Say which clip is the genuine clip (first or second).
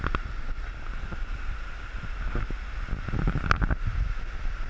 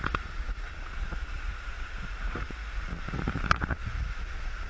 first